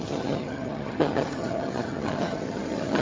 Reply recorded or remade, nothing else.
remade